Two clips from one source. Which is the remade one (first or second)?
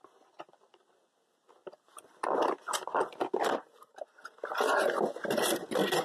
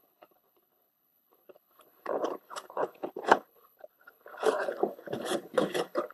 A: second